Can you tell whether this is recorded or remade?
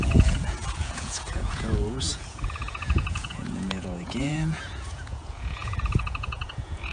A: remade